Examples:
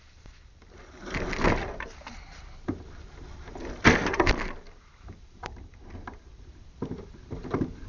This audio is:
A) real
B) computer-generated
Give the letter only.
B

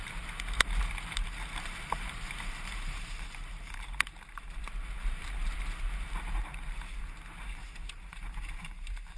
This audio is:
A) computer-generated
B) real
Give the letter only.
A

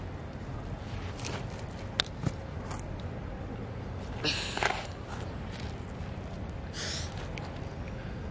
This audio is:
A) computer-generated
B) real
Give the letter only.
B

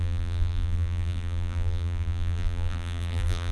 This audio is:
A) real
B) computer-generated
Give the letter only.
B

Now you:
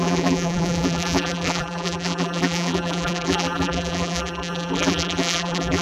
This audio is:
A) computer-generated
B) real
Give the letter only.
A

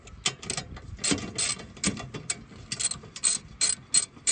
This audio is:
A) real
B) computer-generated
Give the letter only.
A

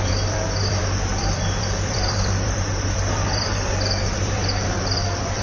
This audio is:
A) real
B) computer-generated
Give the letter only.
B